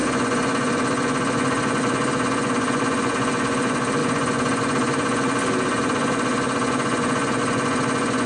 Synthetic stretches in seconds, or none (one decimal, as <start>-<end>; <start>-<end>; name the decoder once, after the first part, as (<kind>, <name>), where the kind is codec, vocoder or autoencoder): 0.0-8.3 (vocoder, Vocos)